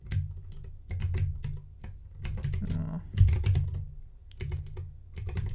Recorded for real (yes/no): yes